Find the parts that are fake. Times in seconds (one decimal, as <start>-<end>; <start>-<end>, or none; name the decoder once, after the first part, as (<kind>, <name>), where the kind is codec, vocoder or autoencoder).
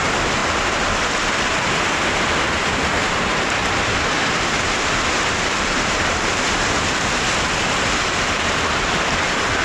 3.6-8.4 (vocoder, BigVGAN v2)